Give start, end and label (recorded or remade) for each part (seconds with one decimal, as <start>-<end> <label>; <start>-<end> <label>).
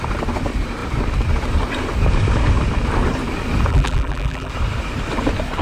0.0-3.7 recorded; 3.7-4.5 remade; 4.5-5.6 recorded